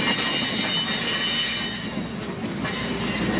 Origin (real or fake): real